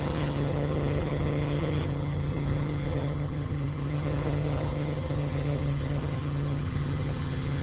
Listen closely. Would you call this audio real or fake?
fake